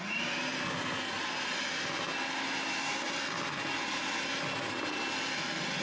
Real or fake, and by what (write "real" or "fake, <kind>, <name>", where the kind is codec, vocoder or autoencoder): real